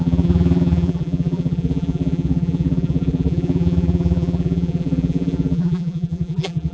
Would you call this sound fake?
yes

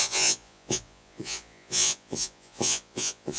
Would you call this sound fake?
yes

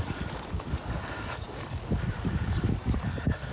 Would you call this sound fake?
yes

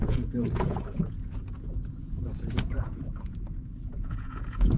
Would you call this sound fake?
yes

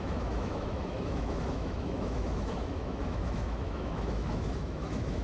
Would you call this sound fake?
yes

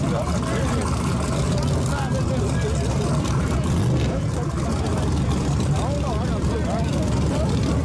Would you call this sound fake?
no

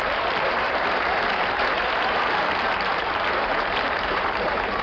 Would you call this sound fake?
yes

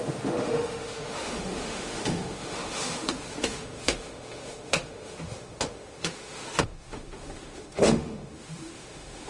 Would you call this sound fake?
yes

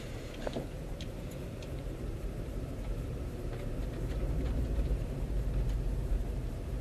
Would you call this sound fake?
yes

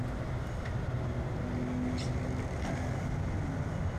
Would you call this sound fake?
no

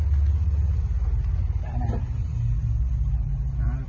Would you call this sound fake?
no